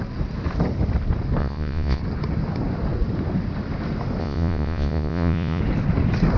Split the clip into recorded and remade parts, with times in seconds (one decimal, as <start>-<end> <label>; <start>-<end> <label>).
0.0-1.4 recorded; 1.4-2.0 remade; 2.0-4.2 recorded; 4.2-5.6 remade; 5.6-6.4 recorded